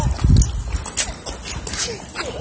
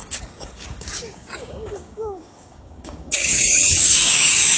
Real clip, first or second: first